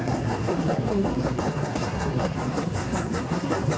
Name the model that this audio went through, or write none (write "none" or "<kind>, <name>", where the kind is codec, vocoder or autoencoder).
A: codec, SNAC